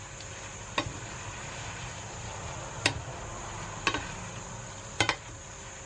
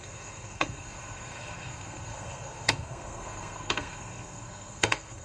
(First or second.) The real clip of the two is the first